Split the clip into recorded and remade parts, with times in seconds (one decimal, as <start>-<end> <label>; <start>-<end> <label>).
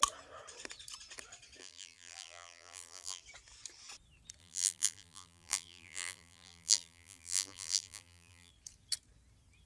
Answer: 0.0-1.6 recorded; 1.6-3.2 remade; 3.2-4.4 recorded; 4.4-8.5 remade; 8.5-9.7 recorded